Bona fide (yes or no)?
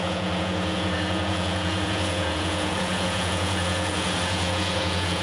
no